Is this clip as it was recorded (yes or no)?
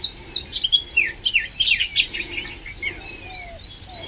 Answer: yes